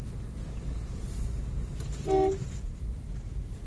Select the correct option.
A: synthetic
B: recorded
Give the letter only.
B